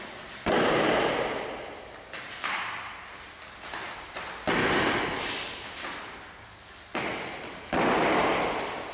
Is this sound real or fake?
real